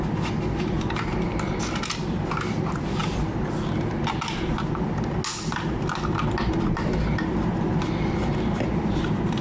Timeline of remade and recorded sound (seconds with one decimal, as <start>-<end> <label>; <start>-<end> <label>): 0.0-9.4 recorded